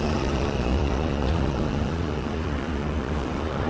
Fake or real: fake